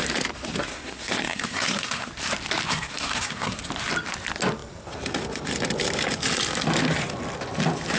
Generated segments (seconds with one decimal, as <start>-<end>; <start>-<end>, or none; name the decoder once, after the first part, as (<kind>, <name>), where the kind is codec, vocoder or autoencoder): 0.7-2.1 (codec, SNAC); 2.7-3.6